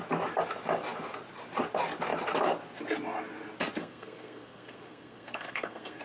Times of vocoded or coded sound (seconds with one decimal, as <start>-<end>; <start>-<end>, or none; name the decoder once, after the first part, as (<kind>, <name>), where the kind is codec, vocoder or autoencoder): 3.8-6.0 (codec, SNAC)